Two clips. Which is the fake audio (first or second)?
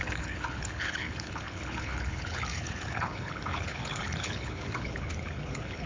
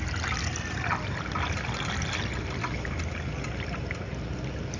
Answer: first